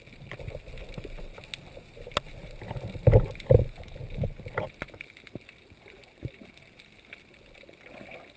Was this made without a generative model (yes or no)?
yes